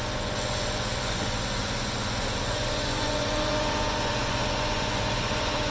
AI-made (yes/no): yes